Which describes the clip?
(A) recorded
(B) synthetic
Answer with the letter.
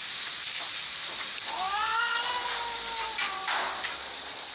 A